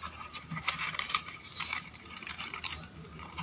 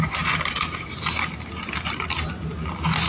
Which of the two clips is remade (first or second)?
first